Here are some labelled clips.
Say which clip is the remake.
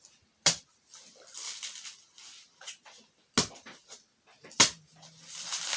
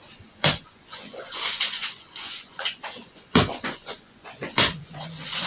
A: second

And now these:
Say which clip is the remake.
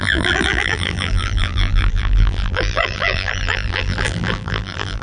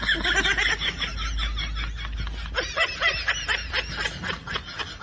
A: first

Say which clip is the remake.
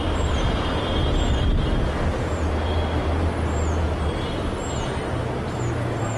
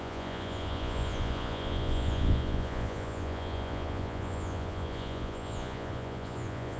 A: second